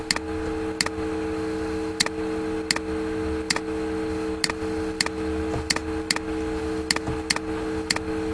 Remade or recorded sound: recorded